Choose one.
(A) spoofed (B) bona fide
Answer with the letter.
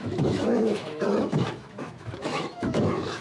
A